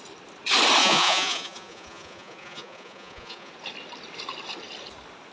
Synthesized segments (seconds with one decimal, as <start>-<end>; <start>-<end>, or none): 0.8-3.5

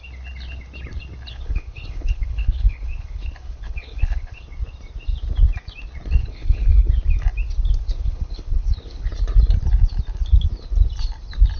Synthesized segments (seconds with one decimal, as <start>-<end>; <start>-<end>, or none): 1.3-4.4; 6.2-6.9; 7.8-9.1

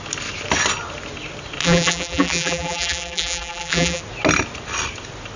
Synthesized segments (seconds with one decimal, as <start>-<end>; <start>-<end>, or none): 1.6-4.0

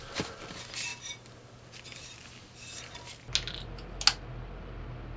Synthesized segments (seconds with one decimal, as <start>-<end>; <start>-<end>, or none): none

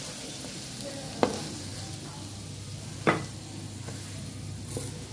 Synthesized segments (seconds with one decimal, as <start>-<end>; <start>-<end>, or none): none

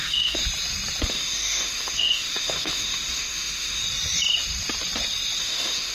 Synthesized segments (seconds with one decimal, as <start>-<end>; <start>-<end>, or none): 0.0-0.4; 1.1-3.8; 5.4-5.9